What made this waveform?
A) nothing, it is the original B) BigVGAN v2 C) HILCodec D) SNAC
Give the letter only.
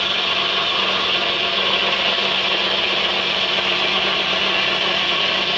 A